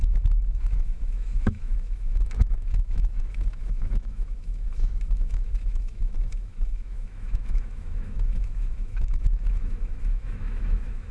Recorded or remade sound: remade